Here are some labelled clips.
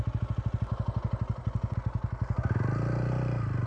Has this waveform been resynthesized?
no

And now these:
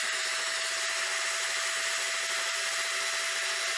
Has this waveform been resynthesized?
no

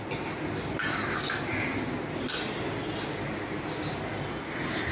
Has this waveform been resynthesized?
no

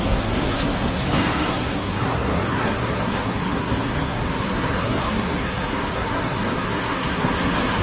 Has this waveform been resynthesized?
yes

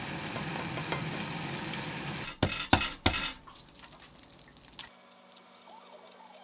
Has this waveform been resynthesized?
no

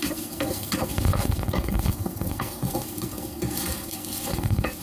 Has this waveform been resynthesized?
yes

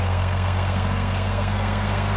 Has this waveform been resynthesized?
yes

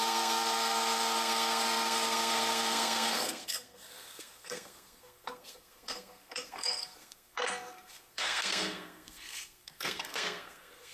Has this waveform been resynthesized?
yes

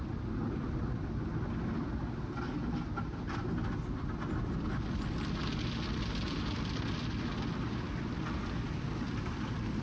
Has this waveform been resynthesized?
no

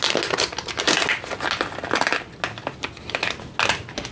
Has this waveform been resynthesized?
no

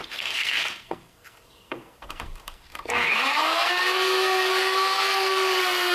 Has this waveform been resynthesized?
yes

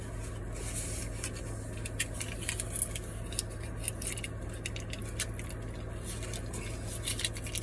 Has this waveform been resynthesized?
no